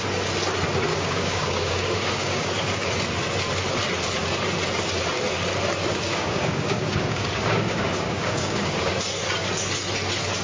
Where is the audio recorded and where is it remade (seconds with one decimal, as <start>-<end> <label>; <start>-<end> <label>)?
0.0-0.9 recorded; 0.9-2.9 remade; 2.9-6.1 recorded; 6.1-8.9 remade; 8.9-10.4 recorded